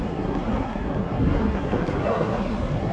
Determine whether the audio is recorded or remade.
remade